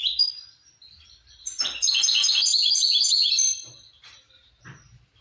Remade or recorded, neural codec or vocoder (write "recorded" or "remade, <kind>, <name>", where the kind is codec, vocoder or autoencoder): remade, vocoder, BigVGAN v2